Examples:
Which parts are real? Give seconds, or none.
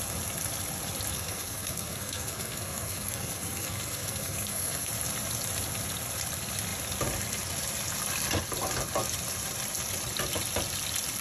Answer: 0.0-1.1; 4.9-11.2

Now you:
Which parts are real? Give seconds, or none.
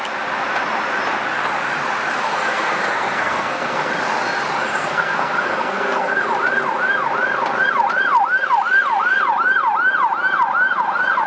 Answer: 0.0-2.3; 3.9-4.7; 6.2-11.3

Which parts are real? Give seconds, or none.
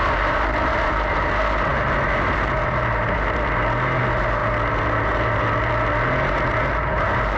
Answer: 0.0-7.4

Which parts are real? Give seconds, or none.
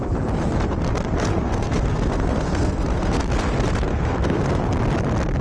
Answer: 0.0-1.3; 3.2-3.9; 4.4-5.4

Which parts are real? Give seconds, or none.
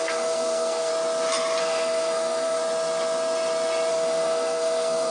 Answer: 0.9-1.6; 2.6-3.9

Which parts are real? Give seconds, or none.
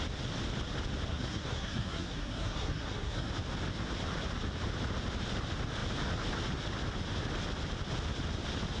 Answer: 0.0-1.1; 3.3-8.8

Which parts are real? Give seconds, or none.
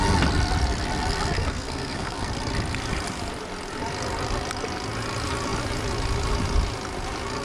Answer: 0.0-1.4; 2.3-7.4